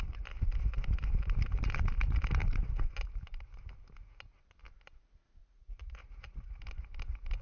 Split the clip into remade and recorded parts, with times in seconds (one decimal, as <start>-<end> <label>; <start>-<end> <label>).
0.0-5.4 recorded; 5.4-6.6 remade; 6.6-7.4 recorded